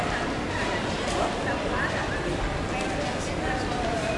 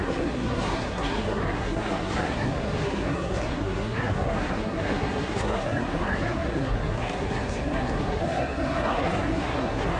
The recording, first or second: first